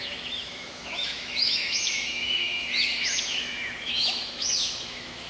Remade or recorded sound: remade